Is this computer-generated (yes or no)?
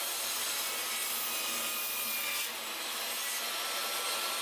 no